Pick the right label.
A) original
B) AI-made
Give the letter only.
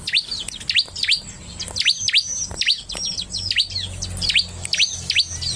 A